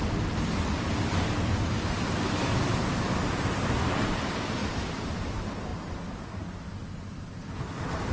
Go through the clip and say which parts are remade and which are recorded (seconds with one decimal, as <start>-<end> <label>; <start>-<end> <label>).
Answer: 0.0-8.1 recorded